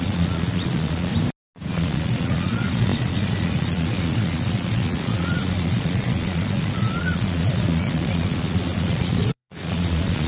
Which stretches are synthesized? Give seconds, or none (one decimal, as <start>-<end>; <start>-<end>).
0.0-1.1; 1.7-10.3